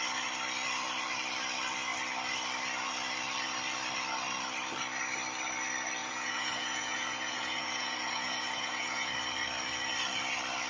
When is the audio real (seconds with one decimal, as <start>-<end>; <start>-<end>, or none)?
0.0-6.0; 9.1-10.7